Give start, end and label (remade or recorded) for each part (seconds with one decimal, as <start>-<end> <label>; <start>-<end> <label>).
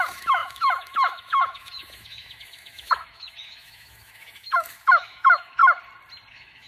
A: 0.0-5.6 remade; 5.6-6.3 recorded; 6.3-6.7 remade